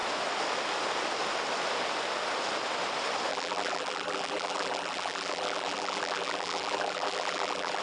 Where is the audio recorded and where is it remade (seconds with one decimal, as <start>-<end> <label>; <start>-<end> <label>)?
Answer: 0.0-3.3 recorded; 3.3-7.8 remade